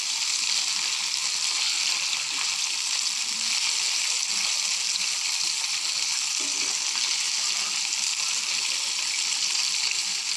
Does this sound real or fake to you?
real